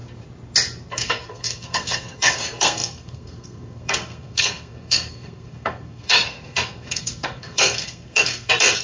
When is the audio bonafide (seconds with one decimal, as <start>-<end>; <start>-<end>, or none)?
0.0-0.9